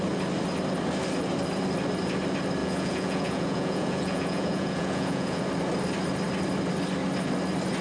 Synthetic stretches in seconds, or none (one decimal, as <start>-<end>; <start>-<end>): 2.6-5.4